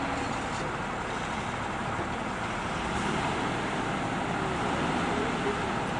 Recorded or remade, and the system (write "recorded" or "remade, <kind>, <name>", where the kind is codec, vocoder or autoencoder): recorded